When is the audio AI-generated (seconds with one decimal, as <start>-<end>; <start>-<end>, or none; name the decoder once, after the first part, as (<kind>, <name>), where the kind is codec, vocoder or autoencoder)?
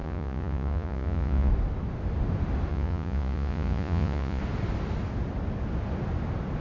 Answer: 0.0-1.5 (vocoder, Vocos); 2.7-4.4